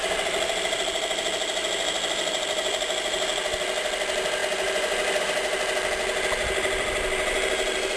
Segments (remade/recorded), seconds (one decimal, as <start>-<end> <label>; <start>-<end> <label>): 0.0-8.0 recorded